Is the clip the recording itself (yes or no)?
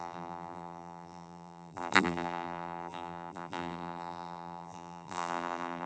no